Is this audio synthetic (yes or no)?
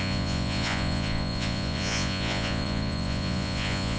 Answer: yes